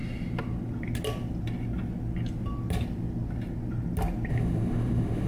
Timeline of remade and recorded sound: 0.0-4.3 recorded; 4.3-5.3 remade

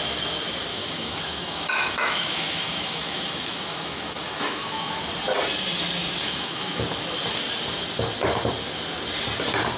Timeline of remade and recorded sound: 0.0-0.7 recorded; 0.7-5.0 remade; 5.0-6.2 recorded; 6.2-6.8 remade; 6.8-9.8 recorded

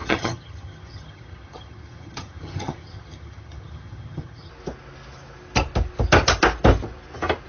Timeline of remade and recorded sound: 0.0-4.5 remade; 4.5-7.5 recorded

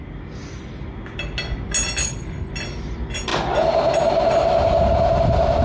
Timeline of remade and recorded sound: 0.0-2.0 recorded; 2.0-2.5 remade; 2.5-5.6 recorded

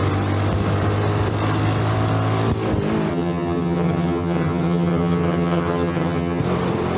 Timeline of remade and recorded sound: 0.0-3.1 recorded; 3.1-6.4 remade; 6.4-7.0 recorded

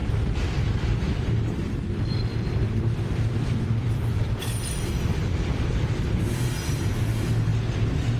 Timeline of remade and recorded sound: 0.0-1.2 remade; 1.2-2.1 recorded; 2.1-6.2 remade; 6.2-7.5 recorded; 7.5-8.2 remade

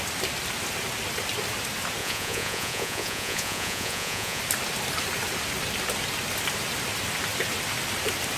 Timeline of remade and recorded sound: 0.0-2.0 recorded; 2.0-4.4 remade; 4.4-8.4 recorded